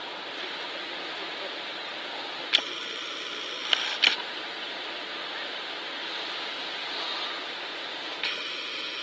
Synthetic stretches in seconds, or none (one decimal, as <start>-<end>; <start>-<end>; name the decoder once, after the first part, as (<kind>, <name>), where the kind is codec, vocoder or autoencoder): none